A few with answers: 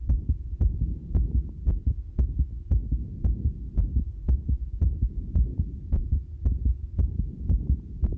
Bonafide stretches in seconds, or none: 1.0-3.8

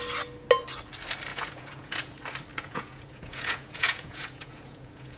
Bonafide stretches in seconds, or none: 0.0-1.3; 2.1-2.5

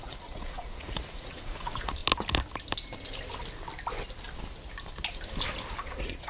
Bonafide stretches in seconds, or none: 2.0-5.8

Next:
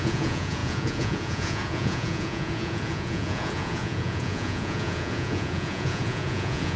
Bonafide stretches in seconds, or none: none